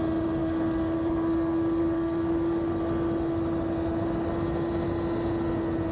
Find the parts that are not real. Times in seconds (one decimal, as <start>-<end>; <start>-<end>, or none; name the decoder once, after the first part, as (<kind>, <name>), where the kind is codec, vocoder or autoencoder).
0.4-2.8 (codec, DAC)